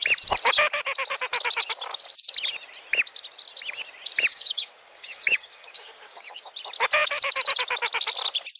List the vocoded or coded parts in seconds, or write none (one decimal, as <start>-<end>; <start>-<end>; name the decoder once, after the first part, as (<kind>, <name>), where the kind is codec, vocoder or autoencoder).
4.3-6.5 (codec, DAC)